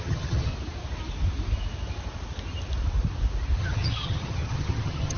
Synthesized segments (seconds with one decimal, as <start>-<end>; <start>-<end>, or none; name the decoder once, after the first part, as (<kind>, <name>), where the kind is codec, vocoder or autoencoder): 0.0-0.5 (vocoder, HiFi-GAN); 3.6-5.2